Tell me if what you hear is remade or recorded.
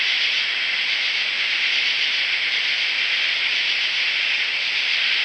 recorded